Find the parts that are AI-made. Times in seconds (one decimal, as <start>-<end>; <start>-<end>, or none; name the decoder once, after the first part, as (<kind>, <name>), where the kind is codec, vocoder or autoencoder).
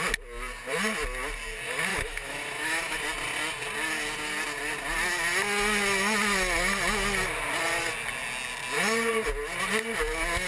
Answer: 1.9-3.0 (autoencoder, DAC-VAE)